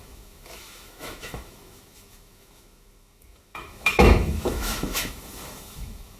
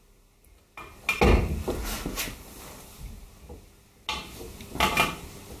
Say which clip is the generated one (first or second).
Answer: first